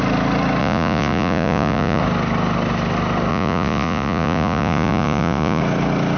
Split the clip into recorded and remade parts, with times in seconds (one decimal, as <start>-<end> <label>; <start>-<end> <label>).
0.0-0.6 recorded; 0.6-2.0 remade; 2.0-3.3 recorded; 3.3-5.6 remade; 5.6-6.2 recorded

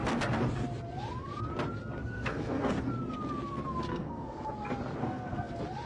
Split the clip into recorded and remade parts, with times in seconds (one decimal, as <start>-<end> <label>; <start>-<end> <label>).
0.0-2.0 recorded; 2.0-2.7 remade; 2.7-3.9 recorded; 3.9-4.5 remade; 4.5-5.0 recorded; 5.0-5.5 remade; 5.5-5.9 recorded

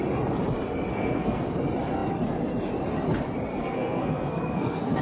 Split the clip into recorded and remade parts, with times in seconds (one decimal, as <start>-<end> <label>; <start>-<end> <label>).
0.0-0.9 recorded; 0.9-1.5 remade; 1.5-3.5 recorded; 3.5-5.0 remade

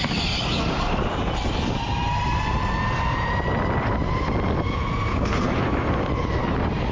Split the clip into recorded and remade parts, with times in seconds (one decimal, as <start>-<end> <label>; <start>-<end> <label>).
0.0-5.1 recorded; 5.1-5.6 remade; 5.6-6.9 recorded